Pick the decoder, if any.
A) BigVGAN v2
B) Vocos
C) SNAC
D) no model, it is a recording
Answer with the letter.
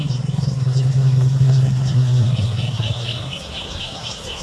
C